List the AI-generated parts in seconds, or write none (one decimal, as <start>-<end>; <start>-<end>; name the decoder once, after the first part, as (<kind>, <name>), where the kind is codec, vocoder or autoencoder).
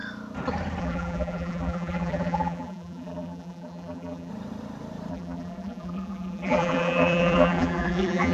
0.8-4.3 (vocoder, BigVGAN v2); 5.1-8.3